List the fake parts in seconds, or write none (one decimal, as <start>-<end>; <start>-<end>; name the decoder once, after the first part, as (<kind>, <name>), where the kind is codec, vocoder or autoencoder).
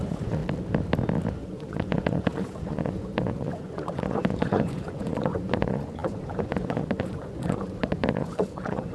0.0-0.4 (vocoder, Vocos); 1.3-8.9